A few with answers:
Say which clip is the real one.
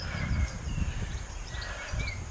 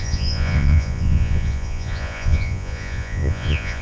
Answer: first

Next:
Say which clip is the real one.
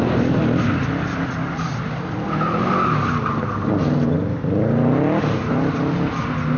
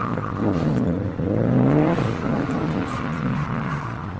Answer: first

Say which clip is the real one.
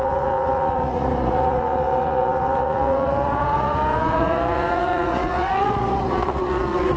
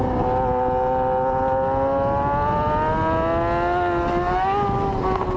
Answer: second